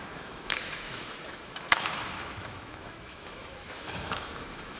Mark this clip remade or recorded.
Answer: remade